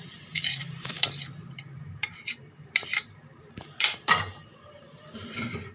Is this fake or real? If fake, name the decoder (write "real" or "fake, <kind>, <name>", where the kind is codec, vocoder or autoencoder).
fake, vocoder, BigVGAN v2